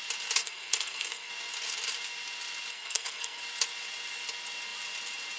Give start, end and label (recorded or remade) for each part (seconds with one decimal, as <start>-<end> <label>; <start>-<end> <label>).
0.0-0.4 recorded; 0.4-1.3 remade; 1.3-2.7 recorded; 2.7-3.4 remade; 3.4-5.4 recorded